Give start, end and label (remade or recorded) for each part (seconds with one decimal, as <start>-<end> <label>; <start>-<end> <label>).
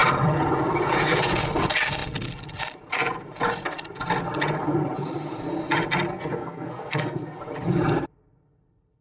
0.0-6.1 recorded; 6.1-7.4 remade; 7.4-9.0 recorded